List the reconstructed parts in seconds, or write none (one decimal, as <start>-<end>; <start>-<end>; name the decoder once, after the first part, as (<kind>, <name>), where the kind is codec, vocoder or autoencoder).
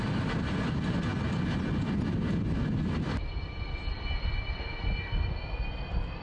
none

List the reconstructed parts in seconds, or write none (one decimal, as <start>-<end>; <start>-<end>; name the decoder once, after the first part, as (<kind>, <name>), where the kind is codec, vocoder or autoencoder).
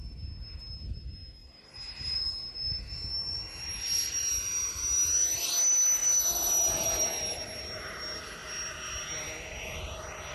1.4-5.4 (vocoder, BigVGAN v2)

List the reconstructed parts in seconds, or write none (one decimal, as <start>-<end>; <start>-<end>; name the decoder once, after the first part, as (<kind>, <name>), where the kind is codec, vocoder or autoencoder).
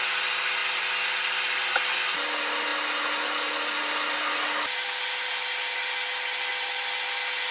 none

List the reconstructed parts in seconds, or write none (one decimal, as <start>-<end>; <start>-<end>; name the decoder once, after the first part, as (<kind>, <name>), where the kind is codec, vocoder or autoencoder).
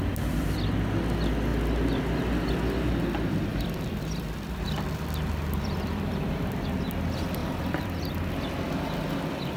3.5-6.7 (vocoder, BigVGAN v2); 7.4-8.7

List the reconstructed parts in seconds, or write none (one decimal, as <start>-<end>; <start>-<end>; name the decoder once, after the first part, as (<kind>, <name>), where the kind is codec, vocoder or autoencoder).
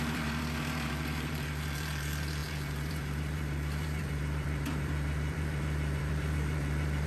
0.0-7.1 (vocoder, BigVGAN v2)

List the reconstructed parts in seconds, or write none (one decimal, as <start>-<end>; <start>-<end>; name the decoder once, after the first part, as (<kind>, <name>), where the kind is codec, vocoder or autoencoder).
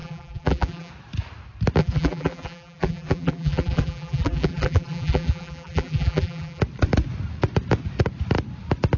0.0-0.9 (vocoder, BigVGAN v2); 1.8-6.6